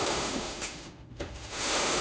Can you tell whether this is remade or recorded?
remade